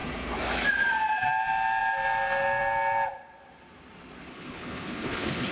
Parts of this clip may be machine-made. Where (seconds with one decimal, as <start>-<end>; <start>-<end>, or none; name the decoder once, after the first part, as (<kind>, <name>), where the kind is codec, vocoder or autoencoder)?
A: 4.3-5.5 (codec, HILCodec)